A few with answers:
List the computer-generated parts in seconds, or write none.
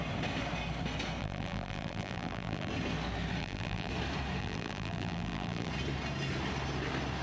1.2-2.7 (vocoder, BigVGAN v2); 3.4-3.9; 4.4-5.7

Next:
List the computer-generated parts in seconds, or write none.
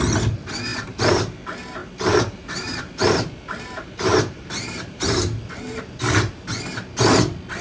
0.7-1.4 (vocoder, BigVGAN v2); 1.8-6.4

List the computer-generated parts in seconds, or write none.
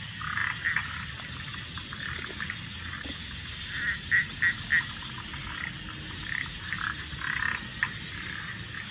7.7-8.4 (vocoder, BigVGAN v2)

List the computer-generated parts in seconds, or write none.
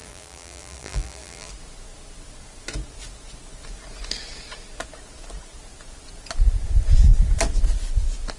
0.0-1.5 (vocoder, BigVGAN v2)